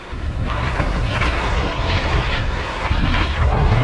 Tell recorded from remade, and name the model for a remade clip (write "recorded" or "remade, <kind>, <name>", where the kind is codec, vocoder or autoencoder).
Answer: remade, codec, SNAC